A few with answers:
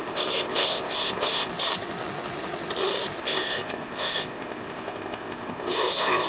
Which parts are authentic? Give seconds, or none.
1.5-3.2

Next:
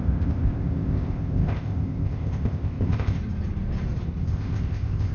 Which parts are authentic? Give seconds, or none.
3.2-4.2

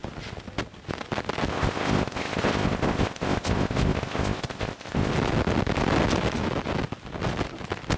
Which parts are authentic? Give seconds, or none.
0.0-1.5; 5.1-8.0

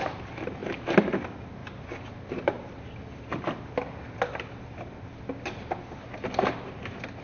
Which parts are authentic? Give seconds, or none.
0.0-7.2

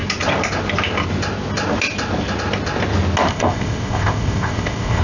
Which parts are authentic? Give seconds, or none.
0.0-3.3

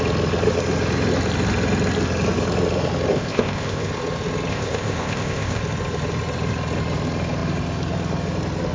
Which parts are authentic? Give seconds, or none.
0.0-3.1; 3.9-4.5; 5.6-8.7

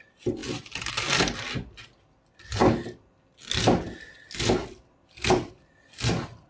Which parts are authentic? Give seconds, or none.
0.0-6.5

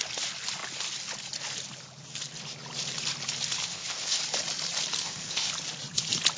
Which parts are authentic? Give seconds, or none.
0.0-3.6; 4.2-5.0; 5.5-6.4